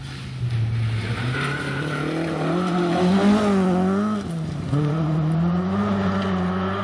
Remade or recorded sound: recorded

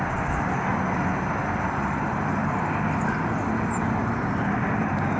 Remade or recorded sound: recorded